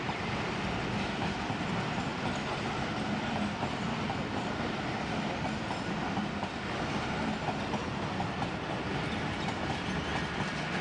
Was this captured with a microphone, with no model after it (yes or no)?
yes